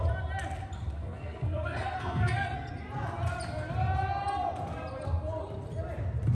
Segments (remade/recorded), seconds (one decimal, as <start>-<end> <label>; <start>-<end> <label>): 0.0-1.0 recorded; 1.0-2.7 remade; 2.7-6.3 recorded